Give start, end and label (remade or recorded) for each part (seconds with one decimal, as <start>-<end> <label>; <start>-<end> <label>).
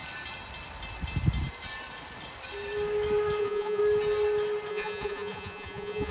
0.0-3.4 recorded; 3.4-3.8 remade; 3.8-4.7 recorded; 4.7-6.1 remade